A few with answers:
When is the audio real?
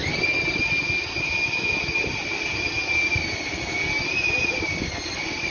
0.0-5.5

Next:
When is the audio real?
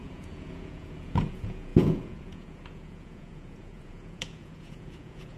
none